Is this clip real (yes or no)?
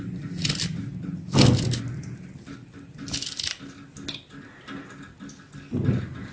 yes